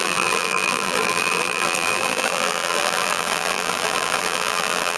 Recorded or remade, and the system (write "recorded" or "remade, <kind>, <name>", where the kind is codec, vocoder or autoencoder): remade, vocoder, BigVGAN v2